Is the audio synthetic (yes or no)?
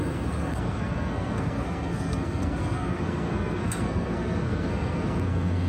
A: yes